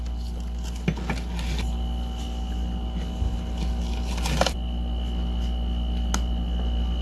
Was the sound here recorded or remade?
recorded